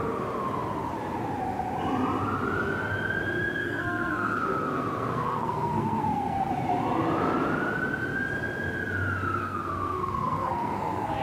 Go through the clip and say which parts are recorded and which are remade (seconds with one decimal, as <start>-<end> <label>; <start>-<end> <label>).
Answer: 0.0-3.6 recorded; 3.6-6.5 remade; 6.5-9.4 recorded; 9.4-11.2 remade